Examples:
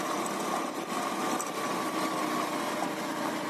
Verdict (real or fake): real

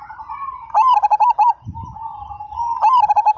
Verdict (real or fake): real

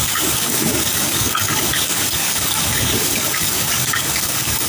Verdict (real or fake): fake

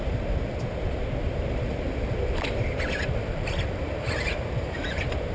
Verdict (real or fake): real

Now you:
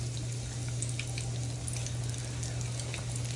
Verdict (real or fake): real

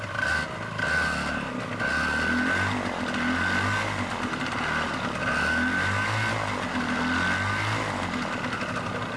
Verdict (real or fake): real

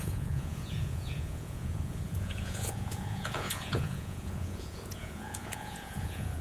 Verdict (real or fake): fake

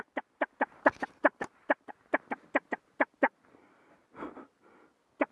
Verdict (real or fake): real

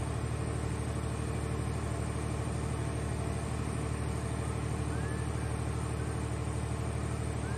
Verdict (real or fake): real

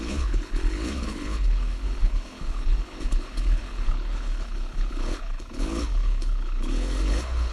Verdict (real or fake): fake